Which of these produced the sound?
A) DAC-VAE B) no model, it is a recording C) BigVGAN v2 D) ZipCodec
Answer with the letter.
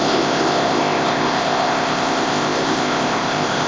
D